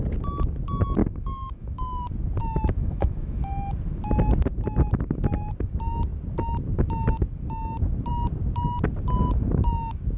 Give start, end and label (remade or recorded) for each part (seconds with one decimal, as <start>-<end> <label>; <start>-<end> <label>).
0.0-1.0 recorded; 1.0-1.8 remade; 1.8-2.4 recorded; 2.4-3.4 remade; 3.4-10.2 recorded